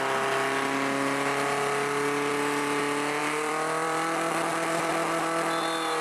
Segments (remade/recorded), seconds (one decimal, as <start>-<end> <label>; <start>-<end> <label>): 0.0-2.3 recorded; 2.3-2.8 remade; 2.8-3.2 recorded; 3.2-4.9 remade; 4.9-6.0 recorded

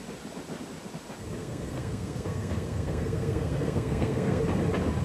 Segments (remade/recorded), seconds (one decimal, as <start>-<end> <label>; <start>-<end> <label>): 0.0-1.4 recorded; 1.4-4.4 remade; 4.4-5.0 recorded

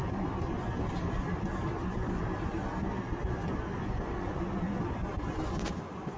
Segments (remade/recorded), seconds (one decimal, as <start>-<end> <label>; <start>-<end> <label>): 0.0-3.8 recorded; 3.8-4.4 remade; 4.4-6.2 recorded

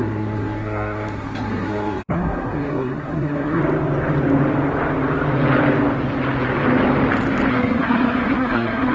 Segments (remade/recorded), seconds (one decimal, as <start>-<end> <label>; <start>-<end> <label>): 0.0-3.6 remade; 3.6-7.5 recorded; 7.5-8.9 remade

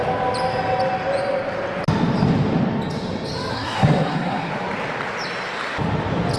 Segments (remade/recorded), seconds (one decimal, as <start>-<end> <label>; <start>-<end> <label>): 0.0-3.5 recorded; 3.5-4.5 remade; 4.5-6.4 recorded

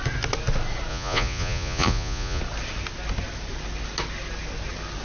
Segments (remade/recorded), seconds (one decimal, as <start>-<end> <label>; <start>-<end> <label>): 0.0-0.9 recorded; 0.9-2.4 remade; 2.4-5.0 recorded

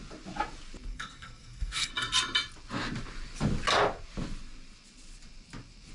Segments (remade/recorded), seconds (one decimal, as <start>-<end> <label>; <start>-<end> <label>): 0.0-0.9 recorded; 0.9-1.9 remade; 1.9-5.9 recorded

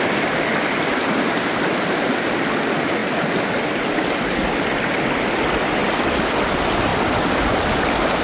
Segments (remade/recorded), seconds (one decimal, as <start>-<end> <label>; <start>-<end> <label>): 0.0-8.2 recorded